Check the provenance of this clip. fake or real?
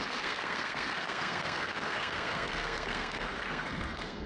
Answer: fake